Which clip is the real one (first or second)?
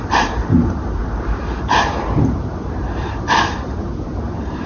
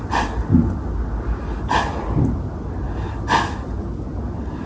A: second